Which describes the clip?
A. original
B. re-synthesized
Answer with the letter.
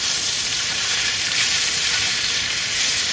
B